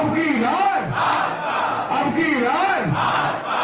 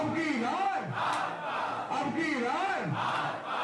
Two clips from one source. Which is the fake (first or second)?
first